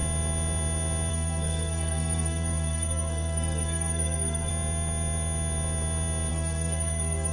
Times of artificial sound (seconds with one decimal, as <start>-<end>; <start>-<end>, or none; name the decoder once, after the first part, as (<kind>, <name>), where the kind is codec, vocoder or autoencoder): 1.1-4.5 (codec, SNAC); 6.3-7.3